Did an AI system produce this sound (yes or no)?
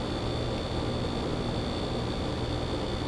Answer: no